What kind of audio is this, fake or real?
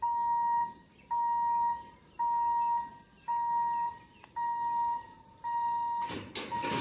real